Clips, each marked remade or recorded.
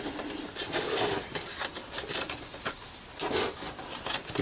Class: recorded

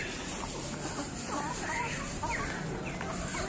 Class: recorded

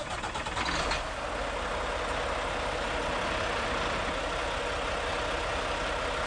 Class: recorded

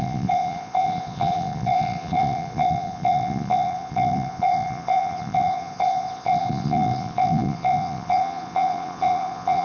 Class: remade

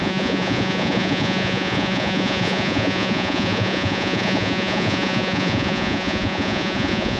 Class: remade